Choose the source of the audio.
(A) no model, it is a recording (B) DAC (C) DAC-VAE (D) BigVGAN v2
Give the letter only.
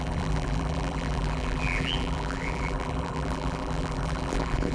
D